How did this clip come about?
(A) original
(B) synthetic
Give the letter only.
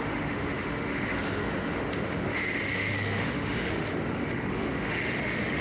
B